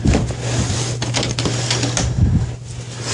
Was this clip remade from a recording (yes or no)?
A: no